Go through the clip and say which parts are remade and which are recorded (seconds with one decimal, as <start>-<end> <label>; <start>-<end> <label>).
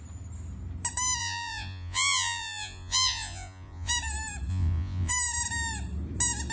0.0-1.2 recorded; 1.2-3.9 remade; 3.9-4.5 recorded; 4.5-5.1 remade; 5.1-6.5 recorded